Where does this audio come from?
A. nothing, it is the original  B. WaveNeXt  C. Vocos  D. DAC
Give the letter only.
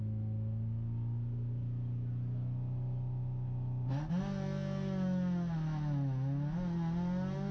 A